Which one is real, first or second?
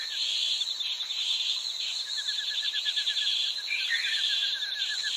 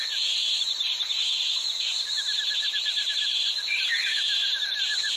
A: first